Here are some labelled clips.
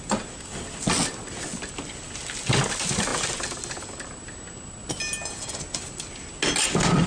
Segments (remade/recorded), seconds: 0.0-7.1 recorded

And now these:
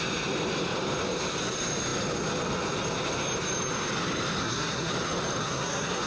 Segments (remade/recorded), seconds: 0.0-4.4 recorded; 4.4-4.9 remade; 4.9-5.4 recorded; 5.4-6.1 remade

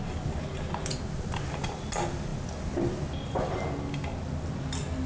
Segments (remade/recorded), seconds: 0.0-5.1 recorded

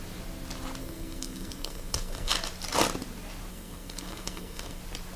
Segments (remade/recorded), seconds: 0.0-0.8 recorded; 0.8-2.3 remade; 2.3-3.5 recorded; 3.5-4.8 remade; 4.8-5.2 recorded

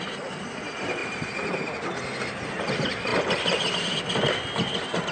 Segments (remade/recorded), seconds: 0.0-5.1 recorded

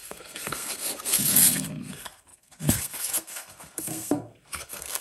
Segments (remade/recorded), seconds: 0.0-5.0 remade

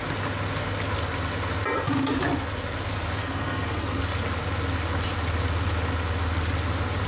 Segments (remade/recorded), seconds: 0.0-3.2 recorded; 3.2-4.0 remade; 4.0-7.1 recorded

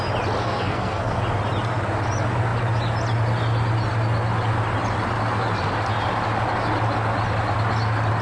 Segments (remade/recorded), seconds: 0.0-0.4 recorded; 0.4-1.2 remade; 1.2-8.2 recorded